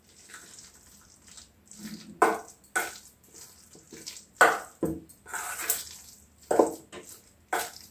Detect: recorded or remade recorded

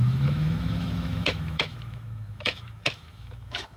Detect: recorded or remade remade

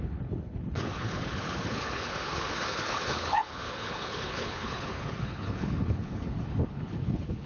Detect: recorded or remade remade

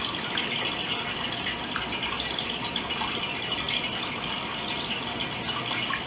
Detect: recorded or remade recorded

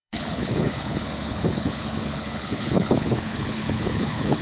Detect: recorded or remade remade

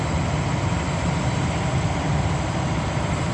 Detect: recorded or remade recorded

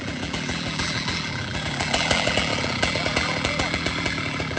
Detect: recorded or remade remade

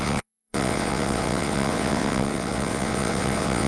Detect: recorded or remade remade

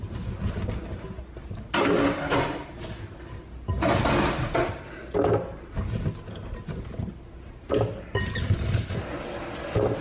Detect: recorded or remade recorded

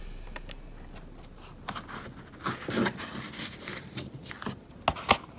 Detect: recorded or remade recorded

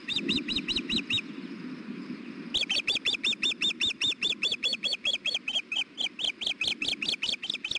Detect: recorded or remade recorded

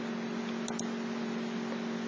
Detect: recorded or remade recorded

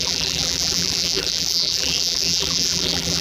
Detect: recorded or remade remade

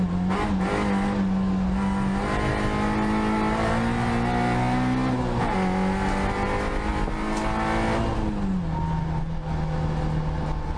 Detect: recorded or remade recorded